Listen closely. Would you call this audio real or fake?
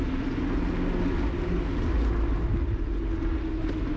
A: real